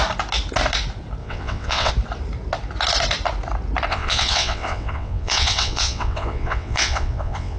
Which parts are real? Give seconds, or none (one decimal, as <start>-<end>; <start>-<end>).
0.0-1.2; 1.9-3.9